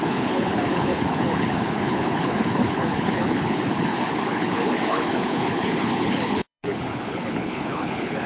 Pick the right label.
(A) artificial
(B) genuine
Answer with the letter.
A